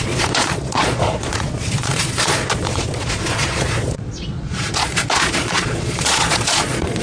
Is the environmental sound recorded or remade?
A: remade